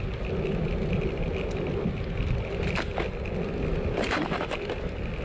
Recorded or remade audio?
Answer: recorded